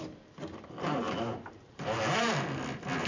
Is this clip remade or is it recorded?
recorded